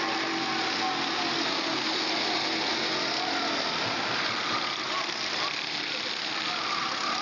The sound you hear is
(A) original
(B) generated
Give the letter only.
A